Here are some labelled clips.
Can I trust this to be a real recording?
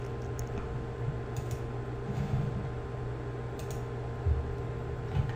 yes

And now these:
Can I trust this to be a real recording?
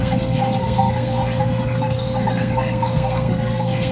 no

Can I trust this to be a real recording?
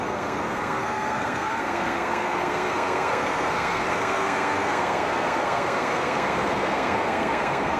no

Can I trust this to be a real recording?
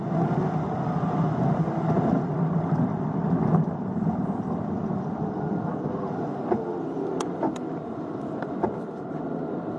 no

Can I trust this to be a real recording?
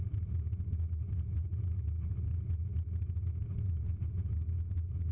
yes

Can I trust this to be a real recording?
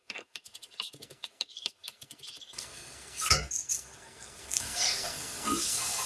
no